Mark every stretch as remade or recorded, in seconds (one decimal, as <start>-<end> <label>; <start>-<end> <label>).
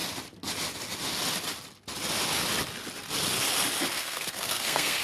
0.0-4.0 recorded; 4.0-5.0 remade